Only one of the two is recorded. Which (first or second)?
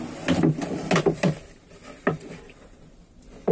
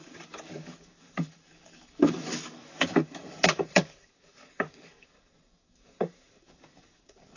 first